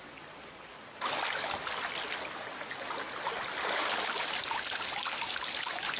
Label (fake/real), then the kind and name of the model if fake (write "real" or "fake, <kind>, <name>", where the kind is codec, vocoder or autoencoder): real